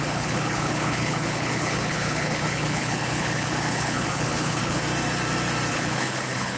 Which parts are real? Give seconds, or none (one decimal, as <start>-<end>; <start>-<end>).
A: 4.8-5.7